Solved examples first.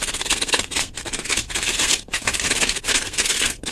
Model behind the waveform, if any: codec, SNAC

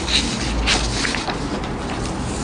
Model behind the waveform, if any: none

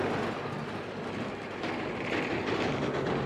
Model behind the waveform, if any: none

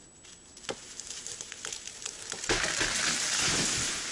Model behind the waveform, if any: none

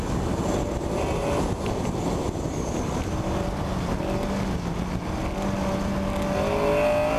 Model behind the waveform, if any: none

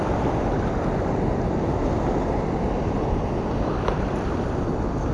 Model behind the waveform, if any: none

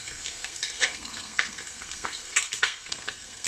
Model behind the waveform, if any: codec, SNAC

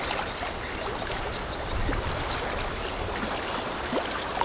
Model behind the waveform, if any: none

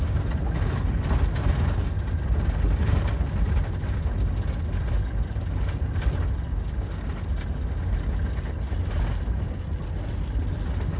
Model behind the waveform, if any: none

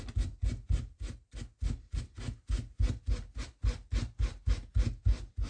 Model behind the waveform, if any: none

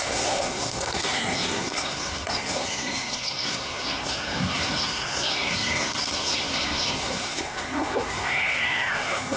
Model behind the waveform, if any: codec, SNAC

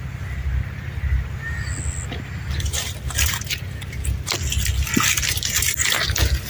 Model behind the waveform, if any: none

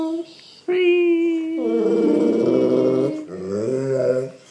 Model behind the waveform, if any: none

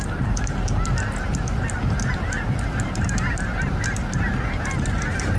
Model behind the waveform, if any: none